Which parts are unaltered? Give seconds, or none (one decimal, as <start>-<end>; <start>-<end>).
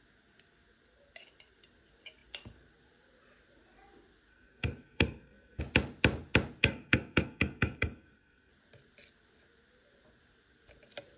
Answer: 0.0-4.3; 5.6-6.6; 8.5-11.2